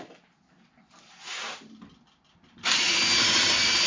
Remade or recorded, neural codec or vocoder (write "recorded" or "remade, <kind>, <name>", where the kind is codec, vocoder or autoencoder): recorded